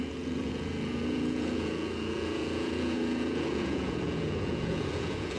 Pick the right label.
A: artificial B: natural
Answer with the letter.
A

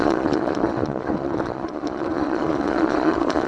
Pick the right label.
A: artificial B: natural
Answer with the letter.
A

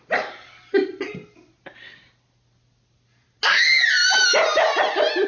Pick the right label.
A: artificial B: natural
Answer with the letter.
B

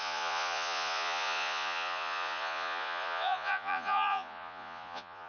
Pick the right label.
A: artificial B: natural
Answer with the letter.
A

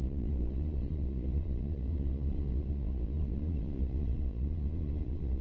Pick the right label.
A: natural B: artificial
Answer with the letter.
B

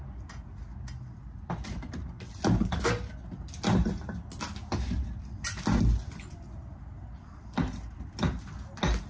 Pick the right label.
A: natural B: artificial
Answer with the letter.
A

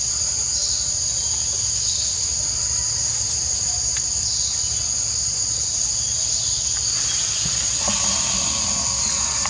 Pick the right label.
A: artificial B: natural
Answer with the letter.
B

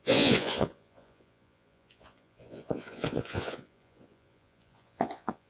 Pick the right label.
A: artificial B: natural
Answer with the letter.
A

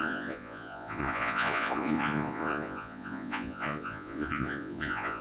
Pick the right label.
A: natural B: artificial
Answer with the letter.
B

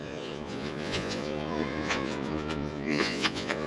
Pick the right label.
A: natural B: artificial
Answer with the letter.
B